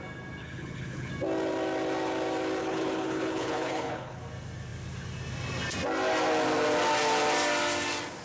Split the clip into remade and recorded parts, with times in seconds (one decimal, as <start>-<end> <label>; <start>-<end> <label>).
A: 0.0-0.4 recorded; 0.4-1.1 remade; 1.1-2.6 recorded; 2.6-4.2 remade; 4.2-8.2 recorded